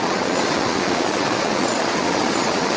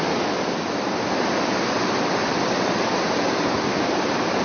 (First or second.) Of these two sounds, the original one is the second